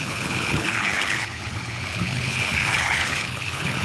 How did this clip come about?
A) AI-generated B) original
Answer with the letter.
A